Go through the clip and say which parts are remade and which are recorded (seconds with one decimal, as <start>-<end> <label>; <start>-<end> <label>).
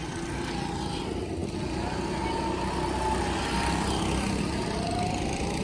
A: 0.0-5.6 recorded